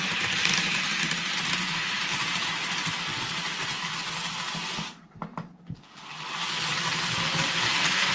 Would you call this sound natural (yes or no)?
yes